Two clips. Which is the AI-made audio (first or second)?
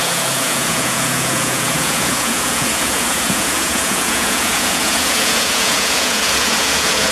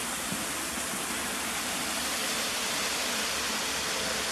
first